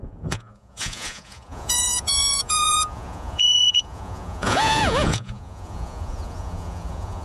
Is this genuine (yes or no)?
no